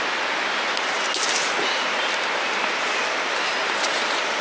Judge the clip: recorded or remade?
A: recorded